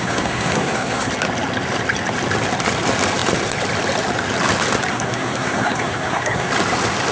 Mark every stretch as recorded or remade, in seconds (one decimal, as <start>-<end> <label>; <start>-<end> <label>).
0.0-1.1 remade; 1.1-4.9 recorded; 4.9-6.5 remade; 6.5-7.1 recorded